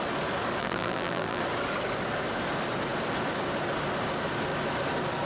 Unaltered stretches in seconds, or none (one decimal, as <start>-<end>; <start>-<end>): 0.0-0.6; 1.4-5.3

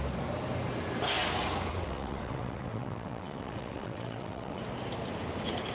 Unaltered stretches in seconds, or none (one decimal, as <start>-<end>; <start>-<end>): 0.0-1.7; 4.6-5.7

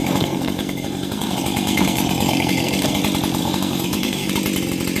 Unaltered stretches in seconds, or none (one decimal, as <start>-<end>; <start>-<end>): 3.0-3.4; 4.3-5.0

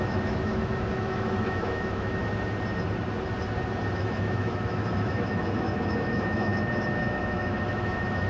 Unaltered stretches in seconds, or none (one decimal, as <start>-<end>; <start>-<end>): 2.2-3.9; 6.5-7.0

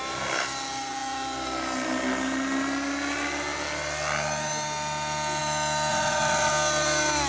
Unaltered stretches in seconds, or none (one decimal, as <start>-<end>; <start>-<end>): 0.0-5.9; 6.5-7.3